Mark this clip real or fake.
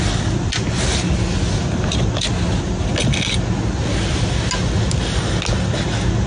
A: real